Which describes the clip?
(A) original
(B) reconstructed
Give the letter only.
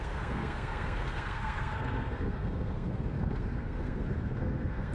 B